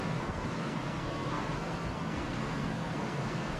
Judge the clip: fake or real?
fake